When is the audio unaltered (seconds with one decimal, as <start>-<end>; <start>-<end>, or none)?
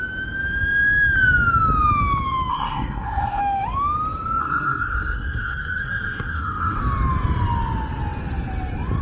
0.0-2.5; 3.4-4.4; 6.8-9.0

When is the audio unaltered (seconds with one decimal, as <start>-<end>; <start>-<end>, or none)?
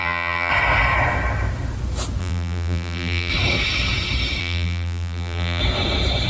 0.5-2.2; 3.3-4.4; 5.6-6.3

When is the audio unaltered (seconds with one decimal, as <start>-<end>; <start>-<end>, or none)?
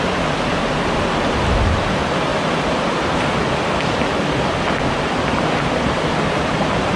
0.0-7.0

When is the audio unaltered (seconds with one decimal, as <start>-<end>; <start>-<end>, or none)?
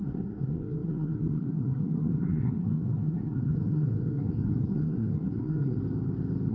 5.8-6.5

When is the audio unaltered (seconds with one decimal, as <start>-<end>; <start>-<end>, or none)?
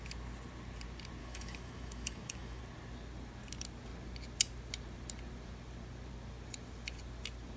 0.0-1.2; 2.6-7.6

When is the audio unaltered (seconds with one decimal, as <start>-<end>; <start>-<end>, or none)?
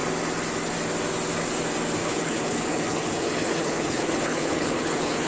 0.0-2.0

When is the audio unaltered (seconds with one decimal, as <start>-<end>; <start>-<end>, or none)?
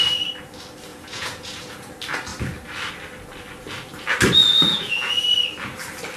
0.0-0.9; 1.9-4.4; 5.2-6.2